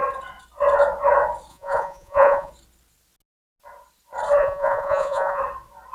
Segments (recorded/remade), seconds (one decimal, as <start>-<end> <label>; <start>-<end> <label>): 0.0-1.5 recorded; 1.5-2.5 remade; 2.5-4.4 recorded; 4.4-5.4 remade; 5.4-5.9 recorded